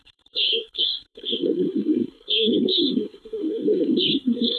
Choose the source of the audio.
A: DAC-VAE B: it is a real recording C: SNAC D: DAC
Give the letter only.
C